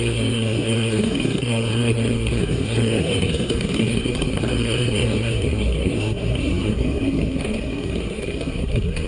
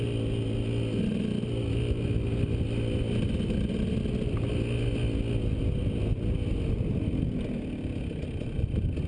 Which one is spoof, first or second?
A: first